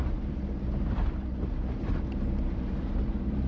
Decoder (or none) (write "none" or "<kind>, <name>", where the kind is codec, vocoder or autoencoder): none